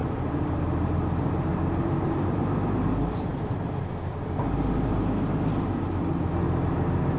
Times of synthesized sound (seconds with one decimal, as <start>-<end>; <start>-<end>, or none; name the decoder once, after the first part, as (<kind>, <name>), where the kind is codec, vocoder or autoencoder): 0.0-0.7 (vocoder, BigVGAN v2); 1.5-2.4